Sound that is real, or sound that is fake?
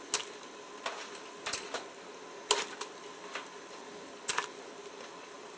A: real